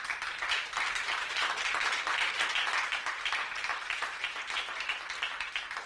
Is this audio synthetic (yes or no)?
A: no